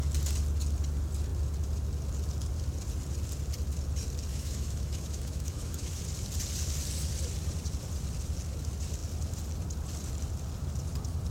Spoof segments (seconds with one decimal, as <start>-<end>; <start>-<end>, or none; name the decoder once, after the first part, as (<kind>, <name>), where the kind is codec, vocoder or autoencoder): 4.3-6.0 (autoencoder, DAC-VAE)

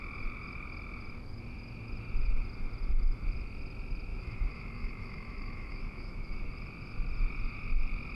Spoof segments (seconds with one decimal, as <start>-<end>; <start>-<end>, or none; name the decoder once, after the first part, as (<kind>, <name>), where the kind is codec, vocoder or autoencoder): 4.1-6.5 (autoencoder, DAC-VAE)